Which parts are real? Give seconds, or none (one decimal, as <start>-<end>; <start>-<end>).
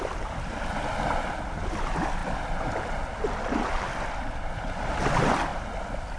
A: 0.0-6.2